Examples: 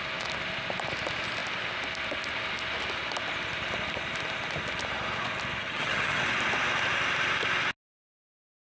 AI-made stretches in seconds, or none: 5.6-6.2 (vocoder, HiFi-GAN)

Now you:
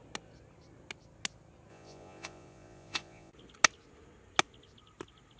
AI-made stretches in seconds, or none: 1.7-3.3 (vocoder, Vocos)

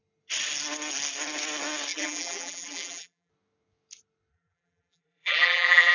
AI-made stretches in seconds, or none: 1.9-3.3 (vocoder, BigVGAN v2); 4.3-5.9

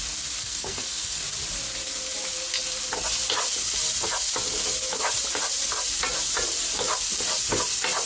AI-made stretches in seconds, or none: 0.4-1.2 (codec, SNAC)

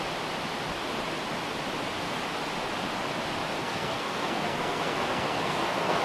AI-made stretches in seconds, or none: 3.6-6.0 (codec, SNAC)